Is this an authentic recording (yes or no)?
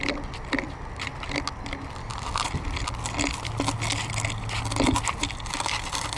yes